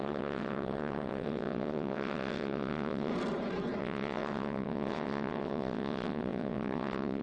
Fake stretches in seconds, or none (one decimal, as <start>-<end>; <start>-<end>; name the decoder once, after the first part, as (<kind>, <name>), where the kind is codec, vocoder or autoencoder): 0.0-3.1 (vocoder, WaveNeXt); 3.8-7.2